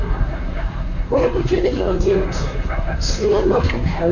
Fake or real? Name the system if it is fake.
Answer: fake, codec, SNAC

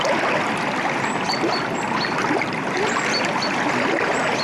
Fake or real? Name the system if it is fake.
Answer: real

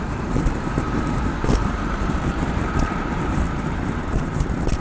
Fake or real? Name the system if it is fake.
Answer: fake, vocoder, BigVGAN v2